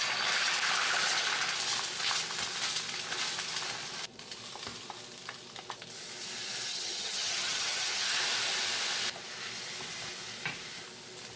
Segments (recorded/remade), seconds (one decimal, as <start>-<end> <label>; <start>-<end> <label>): 0.0-6.7 recorded; 6.7-8.2 remade; 8.2-11.4 recorded